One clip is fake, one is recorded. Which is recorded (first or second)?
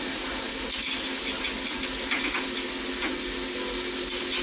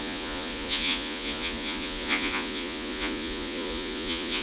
first